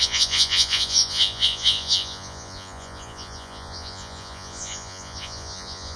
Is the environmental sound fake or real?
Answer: fake